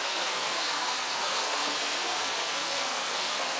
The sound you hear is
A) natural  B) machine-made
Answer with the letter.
B